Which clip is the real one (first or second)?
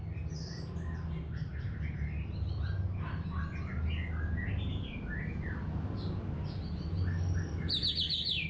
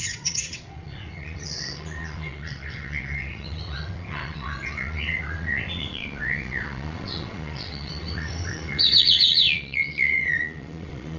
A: first